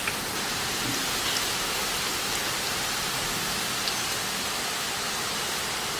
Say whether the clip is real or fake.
real